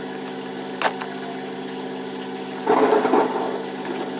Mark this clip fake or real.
real